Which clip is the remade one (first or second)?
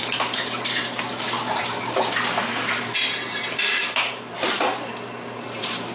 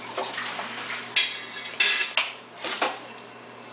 first